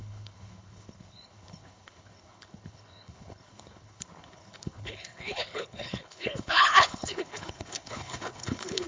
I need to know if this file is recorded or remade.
remade